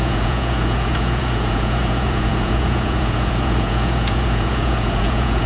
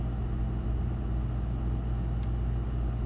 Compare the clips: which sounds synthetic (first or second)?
first